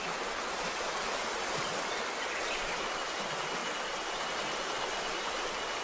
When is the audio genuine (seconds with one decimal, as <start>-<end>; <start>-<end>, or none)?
0.0-5.8